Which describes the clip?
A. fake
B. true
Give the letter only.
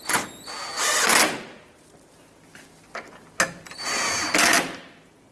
B